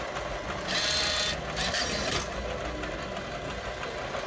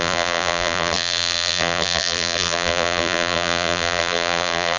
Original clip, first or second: first